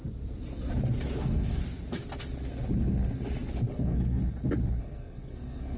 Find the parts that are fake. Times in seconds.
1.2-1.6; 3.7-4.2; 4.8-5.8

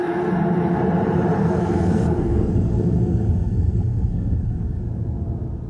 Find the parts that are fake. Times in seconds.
1.4-4.8

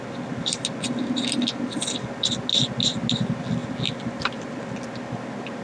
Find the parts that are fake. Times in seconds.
none

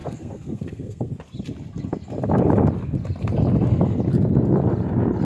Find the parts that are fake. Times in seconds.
0.0-1.1

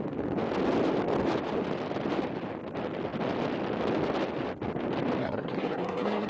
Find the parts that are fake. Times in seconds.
5.2-6.3